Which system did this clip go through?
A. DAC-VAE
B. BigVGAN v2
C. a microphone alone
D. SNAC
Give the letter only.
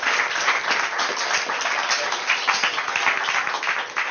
C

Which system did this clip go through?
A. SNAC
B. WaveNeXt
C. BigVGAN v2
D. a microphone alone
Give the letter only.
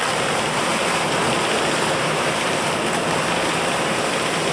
D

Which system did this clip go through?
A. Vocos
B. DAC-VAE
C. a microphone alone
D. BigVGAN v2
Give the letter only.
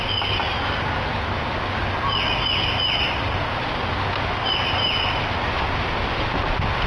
C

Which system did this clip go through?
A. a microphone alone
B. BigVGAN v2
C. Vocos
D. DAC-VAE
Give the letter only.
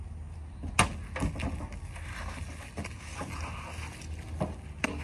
A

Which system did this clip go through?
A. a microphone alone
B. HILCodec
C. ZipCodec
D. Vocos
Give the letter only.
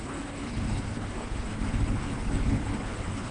B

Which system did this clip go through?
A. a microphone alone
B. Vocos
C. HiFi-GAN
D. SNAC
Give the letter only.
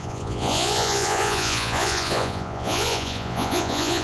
B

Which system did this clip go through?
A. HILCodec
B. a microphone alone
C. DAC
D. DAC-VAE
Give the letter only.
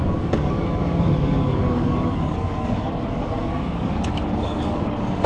C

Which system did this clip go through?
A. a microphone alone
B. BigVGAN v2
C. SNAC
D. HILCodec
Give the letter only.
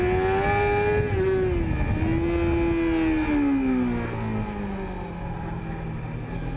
A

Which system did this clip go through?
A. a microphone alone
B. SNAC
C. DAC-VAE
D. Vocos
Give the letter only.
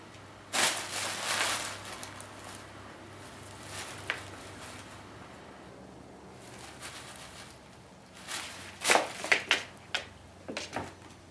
A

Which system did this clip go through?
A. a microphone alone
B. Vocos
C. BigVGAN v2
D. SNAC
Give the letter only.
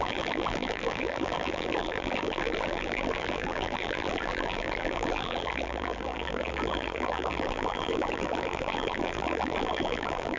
C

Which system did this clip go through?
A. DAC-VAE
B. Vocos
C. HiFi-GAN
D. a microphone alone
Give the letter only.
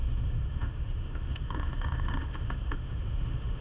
A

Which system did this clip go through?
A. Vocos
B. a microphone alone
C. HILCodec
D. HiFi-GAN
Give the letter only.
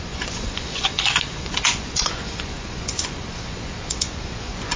A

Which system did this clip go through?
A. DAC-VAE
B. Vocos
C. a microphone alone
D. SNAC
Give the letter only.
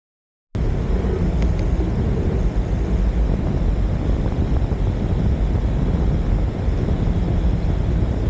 C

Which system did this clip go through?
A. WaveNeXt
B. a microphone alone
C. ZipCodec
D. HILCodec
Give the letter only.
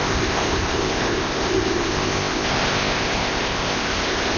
C